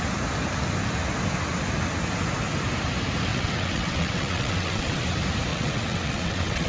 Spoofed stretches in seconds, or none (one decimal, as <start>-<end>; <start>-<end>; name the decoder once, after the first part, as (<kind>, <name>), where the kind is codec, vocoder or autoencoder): 3.3-5.0 (vocoder, WaveNeXt); 5.5-6.7